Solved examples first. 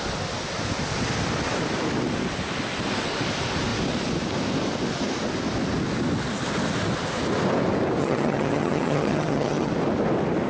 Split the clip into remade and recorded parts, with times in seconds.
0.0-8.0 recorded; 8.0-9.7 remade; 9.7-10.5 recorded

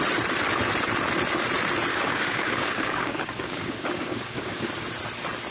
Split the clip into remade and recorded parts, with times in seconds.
0.0-1.9 recorded; 1.9-4.7 remade; 4.7-5.5 recorded

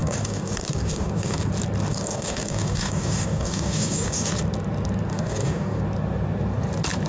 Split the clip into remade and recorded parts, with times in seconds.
0.0-1.5 remade; 1.5-1.9 recorded; 1.9-4.3 remade; 4.3-5.1 recorded; 5.1-5.8 remade; 5.8-7.1 recorded

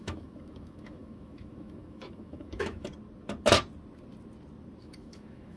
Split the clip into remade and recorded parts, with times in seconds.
0.0-2.9 remade; 2.9-4.8 recorded; 4.8-5.6 remade